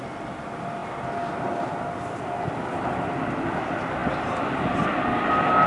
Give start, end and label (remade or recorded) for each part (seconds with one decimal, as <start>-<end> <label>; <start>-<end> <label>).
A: 0.0-5.7 recorded